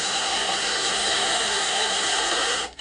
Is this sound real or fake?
fake